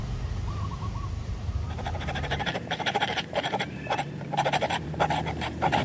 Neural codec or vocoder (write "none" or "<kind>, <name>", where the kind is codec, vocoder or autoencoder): vocoder, BigVGAN v2